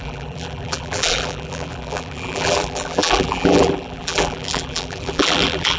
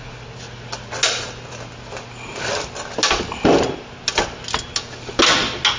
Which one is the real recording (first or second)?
second